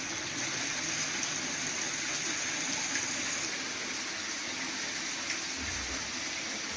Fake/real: real